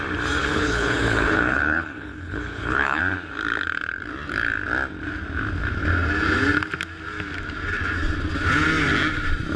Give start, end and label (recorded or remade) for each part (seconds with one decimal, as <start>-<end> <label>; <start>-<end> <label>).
0.0-0.4 recorded; 0.4-3.0 remade; 3.0-9.6 recorded